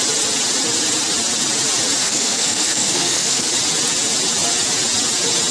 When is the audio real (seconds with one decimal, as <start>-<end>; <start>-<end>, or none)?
0.0-2.0; 3.5-5.5